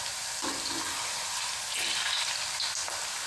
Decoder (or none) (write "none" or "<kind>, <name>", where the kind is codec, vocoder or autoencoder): none